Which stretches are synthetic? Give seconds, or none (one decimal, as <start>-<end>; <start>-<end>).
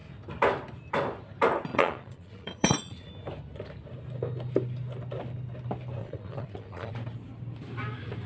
1.7-3.1; 6.0-6.9